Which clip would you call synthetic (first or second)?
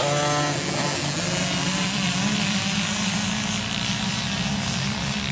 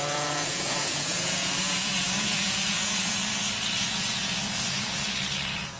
second